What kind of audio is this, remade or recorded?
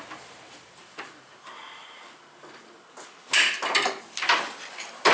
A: remade